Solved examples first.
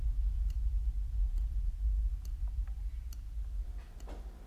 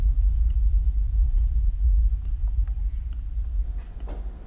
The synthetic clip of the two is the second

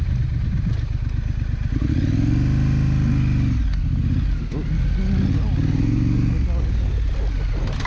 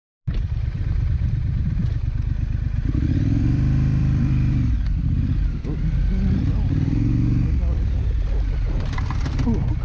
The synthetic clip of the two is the second